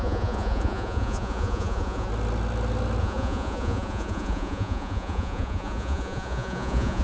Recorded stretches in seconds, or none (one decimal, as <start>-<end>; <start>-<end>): 2.1-3.0